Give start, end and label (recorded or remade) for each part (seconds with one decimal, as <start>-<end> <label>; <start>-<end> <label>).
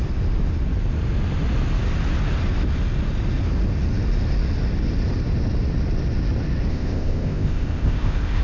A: 0.0-6.7 recorded; 6.7-8.4 remade